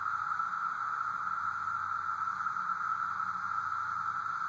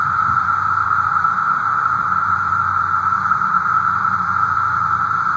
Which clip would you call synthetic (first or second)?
second